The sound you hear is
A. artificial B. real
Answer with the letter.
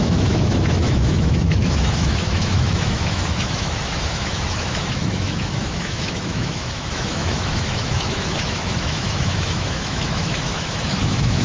A